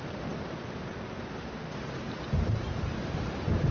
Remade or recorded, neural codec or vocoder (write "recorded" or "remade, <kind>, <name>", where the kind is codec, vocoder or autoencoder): recorded